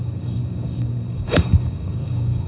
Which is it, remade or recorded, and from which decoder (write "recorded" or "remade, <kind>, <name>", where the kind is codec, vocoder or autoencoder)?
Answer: remade, codec, DAC